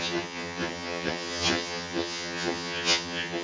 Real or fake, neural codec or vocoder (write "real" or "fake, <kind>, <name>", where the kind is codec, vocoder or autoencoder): fake, vocoder, HiFi-GAN